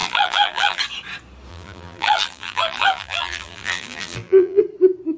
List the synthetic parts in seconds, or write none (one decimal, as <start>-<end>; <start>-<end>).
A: 0.0-0.8; 1.5-4.6

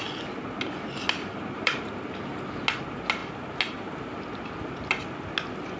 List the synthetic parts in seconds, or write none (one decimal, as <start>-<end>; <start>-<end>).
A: 1.2-2.0

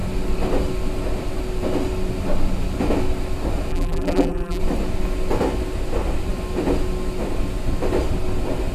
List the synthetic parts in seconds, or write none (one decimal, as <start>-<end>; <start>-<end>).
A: 3.7-4.6

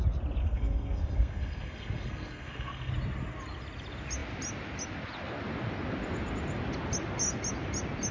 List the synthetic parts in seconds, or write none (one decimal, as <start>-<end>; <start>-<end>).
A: 0.4-2.9

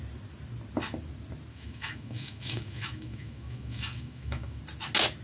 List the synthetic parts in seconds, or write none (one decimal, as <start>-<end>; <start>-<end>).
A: 1.5-4.6

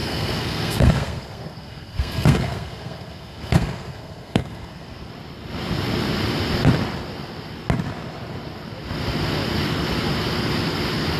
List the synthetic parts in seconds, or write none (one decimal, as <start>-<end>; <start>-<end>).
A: 0.0-5.1

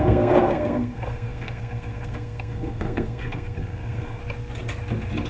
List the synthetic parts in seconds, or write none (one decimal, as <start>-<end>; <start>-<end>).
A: 0.0-4.2

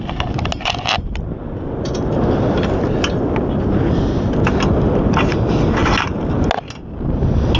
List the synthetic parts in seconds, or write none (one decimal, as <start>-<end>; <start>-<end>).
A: none